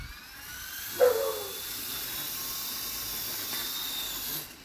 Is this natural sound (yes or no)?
yes